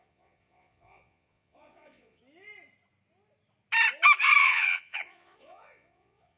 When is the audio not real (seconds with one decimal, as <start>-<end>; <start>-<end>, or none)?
0.0-2.2; 4.4-6.4